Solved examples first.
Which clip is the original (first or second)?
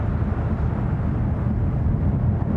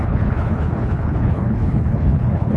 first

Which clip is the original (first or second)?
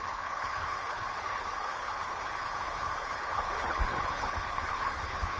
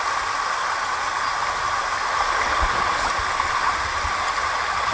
second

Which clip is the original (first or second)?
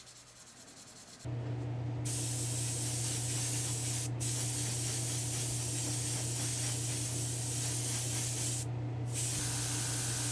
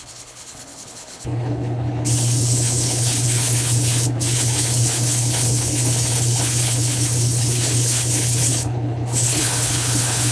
first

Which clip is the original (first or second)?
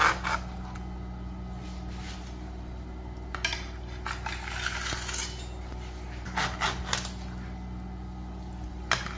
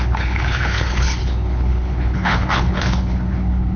first